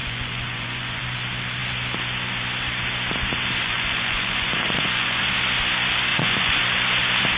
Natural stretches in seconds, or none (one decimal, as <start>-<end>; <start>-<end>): 1.0-3.6; 5.2-6.1; 6.6-7.4